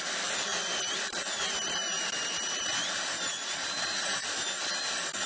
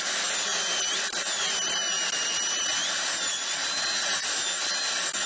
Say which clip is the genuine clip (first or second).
second